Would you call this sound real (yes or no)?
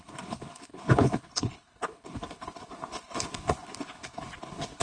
no